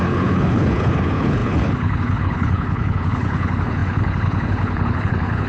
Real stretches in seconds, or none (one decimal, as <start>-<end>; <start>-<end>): none

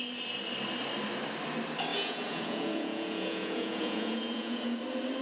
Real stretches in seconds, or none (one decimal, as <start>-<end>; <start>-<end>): 0.0-1.9; 4.8-5.2

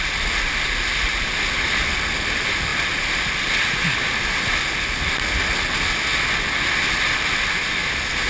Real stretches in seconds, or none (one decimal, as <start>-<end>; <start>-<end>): 0.0-8.3

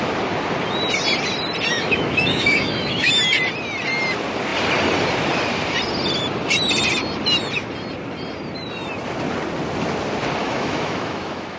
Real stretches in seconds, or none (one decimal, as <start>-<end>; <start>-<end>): 0.0-1.7; 3.1-10.4

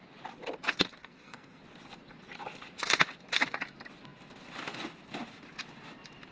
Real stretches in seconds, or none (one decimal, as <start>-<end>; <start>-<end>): 0.0-1.0; 1.6-6.3